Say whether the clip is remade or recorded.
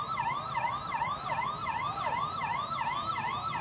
recorded